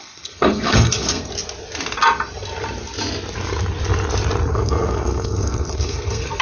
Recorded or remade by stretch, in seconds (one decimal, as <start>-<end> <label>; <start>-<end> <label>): 0.0-1.3 remade; 1.3-4.5 recorded; 4.5-6.4 remade